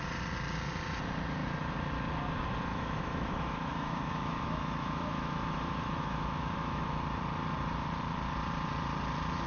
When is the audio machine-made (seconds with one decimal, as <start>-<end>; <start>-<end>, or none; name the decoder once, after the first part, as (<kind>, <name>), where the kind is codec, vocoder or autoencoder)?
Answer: 2.7-7.0 (autoencoder, DAC-VAE)